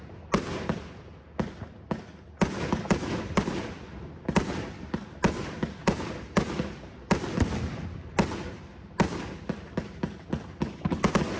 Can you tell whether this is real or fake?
real